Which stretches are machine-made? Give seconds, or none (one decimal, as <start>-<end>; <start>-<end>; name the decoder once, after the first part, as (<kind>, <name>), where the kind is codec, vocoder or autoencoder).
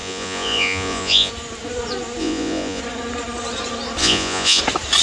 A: 0.0-1.3 (vocoder, Vocos); 2.2-2.8; 4.0-4.6